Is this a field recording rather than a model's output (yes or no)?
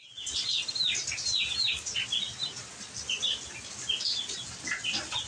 yes